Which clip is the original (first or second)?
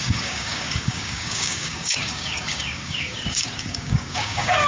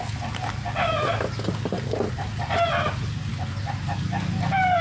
second